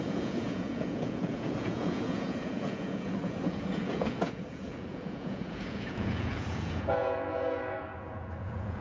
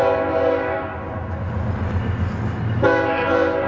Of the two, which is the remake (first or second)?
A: first